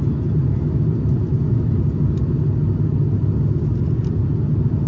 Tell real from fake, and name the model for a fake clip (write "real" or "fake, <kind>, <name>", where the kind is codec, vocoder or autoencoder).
real